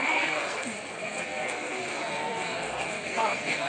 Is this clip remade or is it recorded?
remade